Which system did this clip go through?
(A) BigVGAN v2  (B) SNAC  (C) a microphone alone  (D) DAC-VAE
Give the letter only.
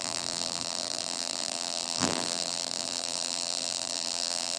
A